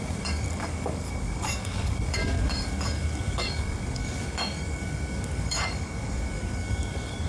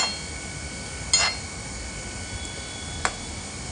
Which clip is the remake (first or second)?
first